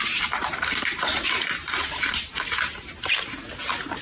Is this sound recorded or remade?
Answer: remade